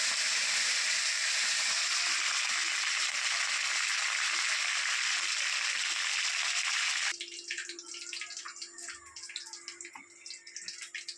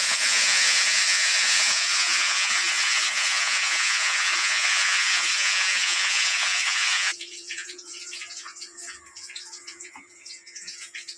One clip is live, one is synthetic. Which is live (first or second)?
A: first